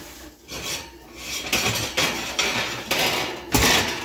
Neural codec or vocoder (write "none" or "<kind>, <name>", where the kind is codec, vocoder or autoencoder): none